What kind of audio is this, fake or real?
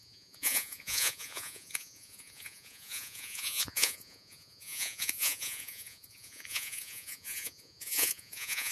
fake